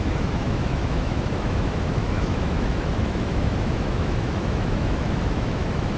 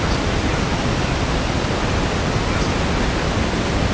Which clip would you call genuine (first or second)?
second